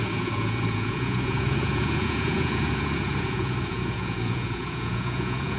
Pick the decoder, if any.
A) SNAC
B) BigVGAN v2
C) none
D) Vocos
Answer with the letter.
D